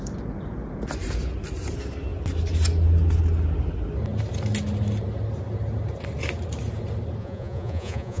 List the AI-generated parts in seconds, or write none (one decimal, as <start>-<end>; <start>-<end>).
7.2-8.2